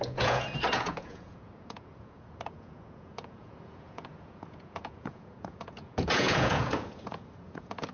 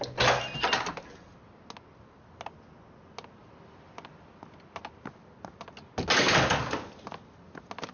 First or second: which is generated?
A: first